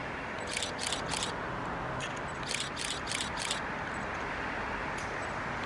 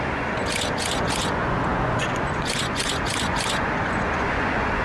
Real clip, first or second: first